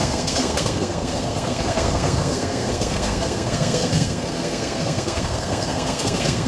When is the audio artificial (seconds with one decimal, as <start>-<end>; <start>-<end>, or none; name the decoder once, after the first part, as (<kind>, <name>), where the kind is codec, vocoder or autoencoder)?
0.0-6.5 (codec, SNAC)